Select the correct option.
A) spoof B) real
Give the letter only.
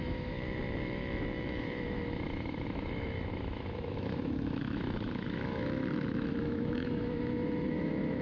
A